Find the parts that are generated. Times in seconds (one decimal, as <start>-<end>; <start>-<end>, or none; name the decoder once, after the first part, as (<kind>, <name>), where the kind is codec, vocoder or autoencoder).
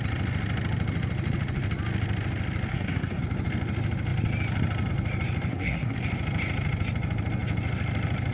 2.7-3.2 (codec, SNAC); 5.5-6.0